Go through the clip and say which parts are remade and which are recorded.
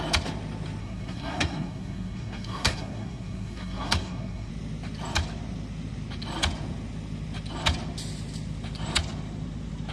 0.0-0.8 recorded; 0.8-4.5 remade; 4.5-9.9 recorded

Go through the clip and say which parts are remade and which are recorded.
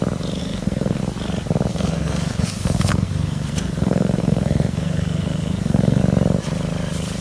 0.0-0.4 recorded; 0.4-1.0 remade; 1.0-1.7 recorded; 1.7-6.0 remade; 6.0-7.2 recorded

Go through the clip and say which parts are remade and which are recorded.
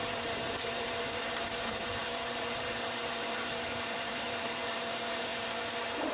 0.0-5.3 remade; 5.3-6.1 recorded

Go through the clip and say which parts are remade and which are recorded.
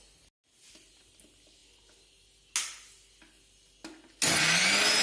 0.0-5.0 recorded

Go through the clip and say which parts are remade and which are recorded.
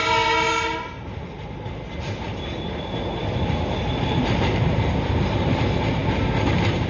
0.0-6.9 recorded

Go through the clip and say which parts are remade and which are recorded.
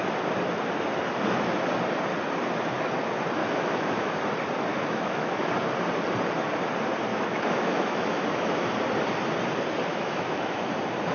0.0-3.4 recorded; 3.4-4.1 remade; 4.1-4.7 recorded; 4.7-5.5 remade; 5.5-7.1 recorded; 7.1-8.7 remade; 8.7-9.9 recorded; 9.9-10.7 remade; 10.7-11.1 recorded